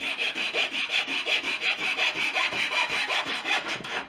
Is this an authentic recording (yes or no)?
no